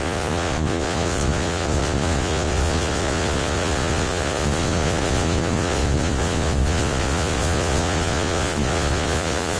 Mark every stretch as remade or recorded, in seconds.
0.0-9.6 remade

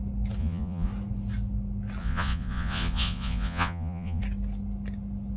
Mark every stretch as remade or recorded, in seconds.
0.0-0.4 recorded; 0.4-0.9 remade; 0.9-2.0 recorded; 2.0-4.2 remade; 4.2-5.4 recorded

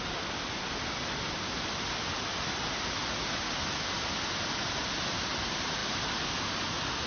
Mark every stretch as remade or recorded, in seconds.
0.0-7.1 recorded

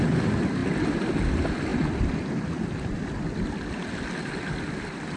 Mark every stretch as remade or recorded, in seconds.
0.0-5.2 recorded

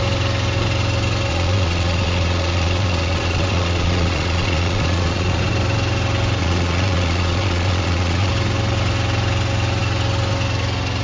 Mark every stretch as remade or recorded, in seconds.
0.0-1.3 recorded; 1.3-5.4 remade; 5.4-6.4 recorded; 6.4-8.3 remade; 8.3-11.0 recorded

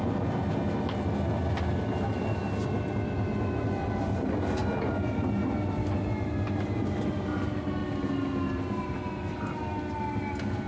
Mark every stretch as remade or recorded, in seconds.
0.0-10.7 recorded